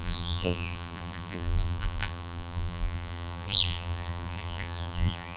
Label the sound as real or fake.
fake